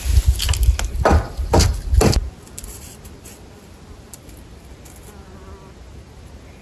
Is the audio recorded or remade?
recorded